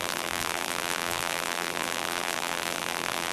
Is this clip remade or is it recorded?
remade